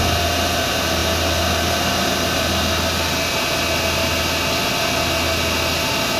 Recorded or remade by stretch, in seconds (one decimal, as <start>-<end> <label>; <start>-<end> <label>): 0.0-6.2 recorded